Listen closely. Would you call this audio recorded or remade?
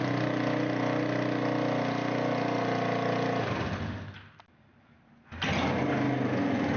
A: recorded